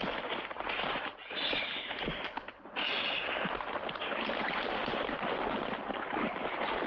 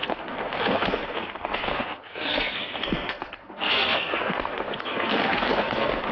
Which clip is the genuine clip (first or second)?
first